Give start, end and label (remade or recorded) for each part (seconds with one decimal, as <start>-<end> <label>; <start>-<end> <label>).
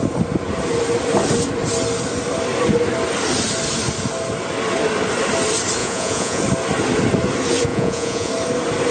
0.0-5.8 recorded; 5.8-6.4 remade; 6.4-7.7 recorded; 7.7-8.3 remade; 8.3-8.9 recorded